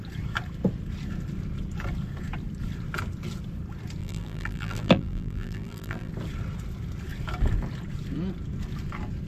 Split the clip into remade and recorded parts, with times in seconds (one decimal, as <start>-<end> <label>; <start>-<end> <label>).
0.0-4.0 recorded; 4.0-6.1 remade; 6.1-9.3 recorded